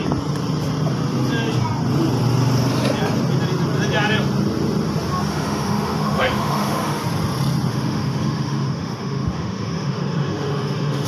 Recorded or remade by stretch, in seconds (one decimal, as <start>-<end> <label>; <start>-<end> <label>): 0.0-5.3 recorded; 5.3-7.0 remade; 7.0-7.7 recorded; 7.7-11.1 remade